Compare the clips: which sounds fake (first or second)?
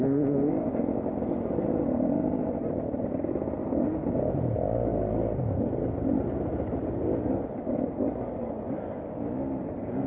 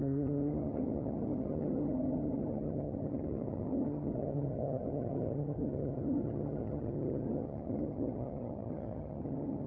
second